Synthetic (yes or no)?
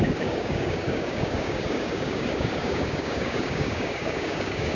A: yes